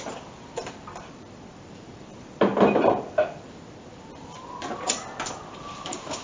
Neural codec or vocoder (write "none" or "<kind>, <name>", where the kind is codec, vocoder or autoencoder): vocoder, BigVGAN v2